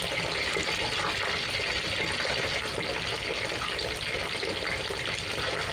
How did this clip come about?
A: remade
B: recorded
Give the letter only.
B